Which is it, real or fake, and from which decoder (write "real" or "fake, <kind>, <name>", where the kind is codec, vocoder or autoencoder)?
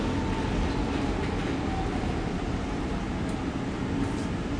real